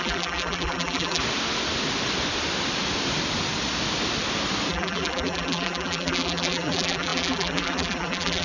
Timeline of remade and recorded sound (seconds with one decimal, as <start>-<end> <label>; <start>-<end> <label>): 0.0-1.2 remade; 1.2-4.7 recorded; 4.7-8.4 remade